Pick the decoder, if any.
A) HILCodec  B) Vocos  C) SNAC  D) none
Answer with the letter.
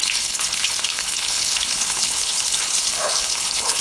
A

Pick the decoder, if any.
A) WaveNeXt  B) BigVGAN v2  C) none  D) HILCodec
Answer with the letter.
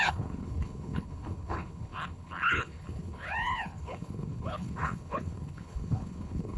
D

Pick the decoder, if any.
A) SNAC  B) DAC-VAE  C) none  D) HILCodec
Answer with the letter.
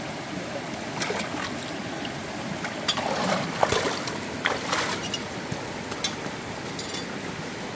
C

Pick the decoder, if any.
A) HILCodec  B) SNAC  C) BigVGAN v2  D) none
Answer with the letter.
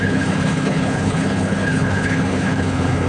A